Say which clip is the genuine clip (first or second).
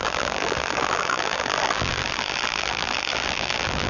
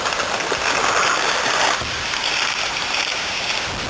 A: second